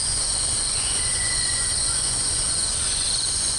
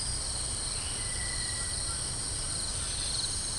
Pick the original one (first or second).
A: second